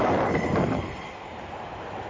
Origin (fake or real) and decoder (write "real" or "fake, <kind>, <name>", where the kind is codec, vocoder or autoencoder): real